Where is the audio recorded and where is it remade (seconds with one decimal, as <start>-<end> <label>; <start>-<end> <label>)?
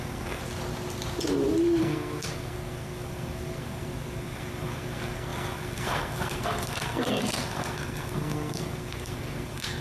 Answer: 0.0-0.4 remade; 0.4-1.8 recorded; 1.8-9.8 remade